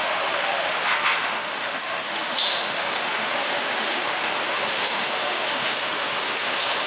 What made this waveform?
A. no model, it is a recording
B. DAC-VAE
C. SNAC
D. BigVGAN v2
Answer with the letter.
B